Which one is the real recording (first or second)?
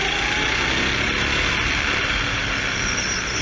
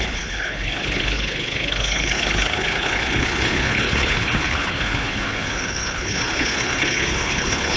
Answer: first